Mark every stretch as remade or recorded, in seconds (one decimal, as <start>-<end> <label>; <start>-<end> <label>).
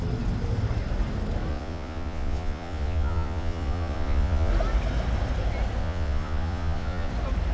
0.0-1.5 recorded; 1.5-4.5 remade; 4.5-5.8 recorded; 5.8-7.1 remade; 7.1-7.5 recorded